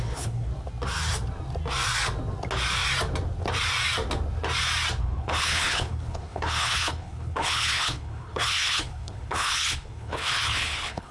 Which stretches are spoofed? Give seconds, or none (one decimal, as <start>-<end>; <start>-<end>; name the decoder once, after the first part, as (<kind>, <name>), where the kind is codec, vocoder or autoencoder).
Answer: 0.0-0.5 (codec, HILCodec); 5.0-11.1